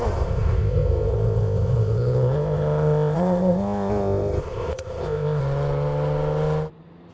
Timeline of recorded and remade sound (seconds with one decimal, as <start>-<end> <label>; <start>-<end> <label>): 0.0-5.4 remade; 5.4-7.1 recorded